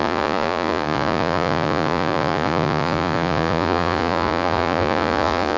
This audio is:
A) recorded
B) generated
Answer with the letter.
B